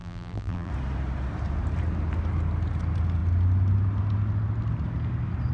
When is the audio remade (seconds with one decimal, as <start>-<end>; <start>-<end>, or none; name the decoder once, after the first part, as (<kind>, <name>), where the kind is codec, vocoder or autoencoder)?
0.0-0.7 (vocoder, BigVGAN v2)